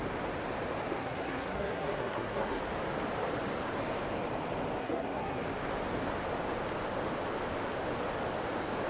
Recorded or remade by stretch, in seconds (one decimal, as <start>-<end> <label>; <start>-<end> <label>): 0.0-1.0 recorded; 1.0-2.6 remade; 2.6-4.8 recorded; 4.8-5.4 remade; 5.4-8.9 recorded